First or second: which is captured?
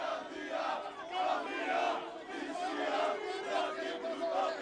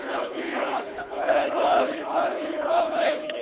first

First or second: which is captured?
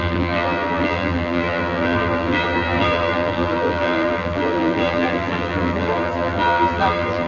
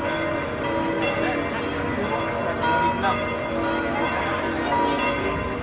second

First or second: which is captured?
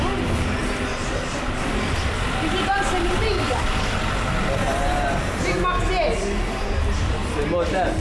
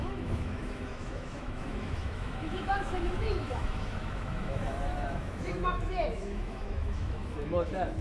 first